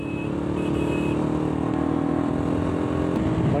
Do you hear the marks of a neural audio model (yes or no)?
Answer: no